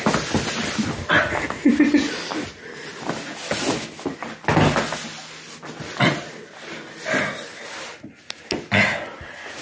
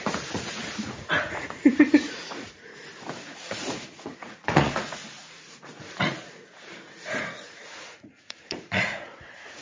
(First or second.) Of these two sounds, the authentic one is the first